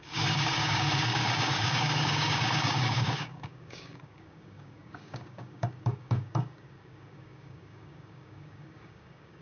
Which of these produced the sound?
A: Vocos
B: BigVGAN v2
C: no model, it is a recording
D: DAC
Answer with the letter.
D